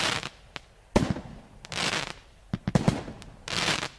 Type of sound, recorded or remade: recorded